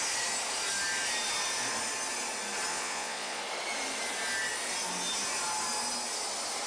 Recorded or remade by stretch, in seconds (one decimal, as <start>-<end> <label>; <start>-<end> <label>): 0.0-2.7 recorded; 2.7-3.4 remade; 3.4-6.7 recorded